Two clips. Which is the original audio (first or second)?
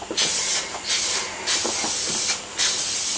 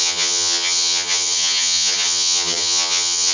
first